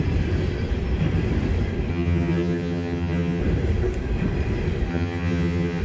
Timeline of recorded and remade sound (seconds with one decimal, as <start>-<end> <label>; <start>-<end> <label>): 0.0-1.9 recorded; 1.9-3.4 remade; 3.4-4.9 recorded; 4.9-5.8 remade